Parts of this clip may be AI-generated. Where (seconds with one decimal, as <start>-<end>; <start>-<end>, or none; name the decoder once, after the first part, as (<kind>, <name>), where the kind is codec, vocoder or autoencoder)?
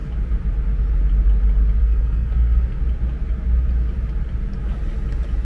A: 1.8-2.8 (codec, SNAC)